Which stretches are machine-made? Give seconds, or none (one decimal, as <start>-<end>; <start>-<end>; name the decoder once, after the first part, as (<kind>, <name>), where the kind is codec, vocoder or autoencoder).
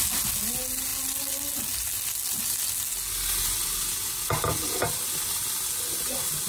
none